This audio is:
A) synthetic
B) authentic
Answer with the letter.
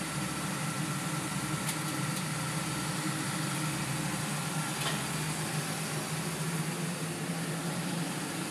B